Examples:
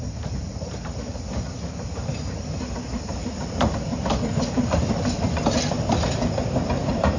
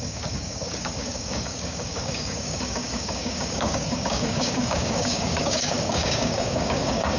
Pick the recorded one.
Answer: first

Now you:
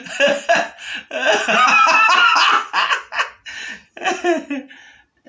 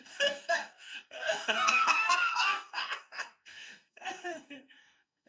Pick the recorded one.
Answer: first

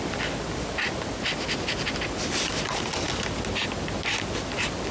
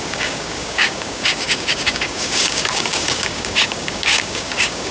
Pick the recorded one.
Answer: first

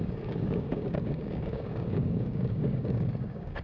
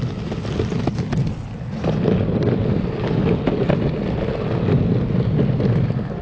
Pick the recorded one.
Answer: second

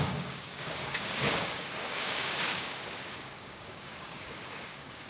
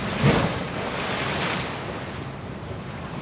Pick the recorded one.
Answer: second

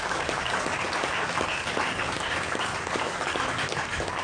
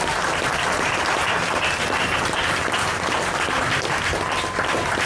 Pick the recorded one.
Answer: second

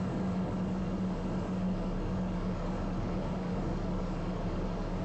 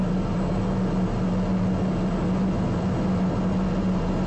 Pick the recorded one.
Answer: second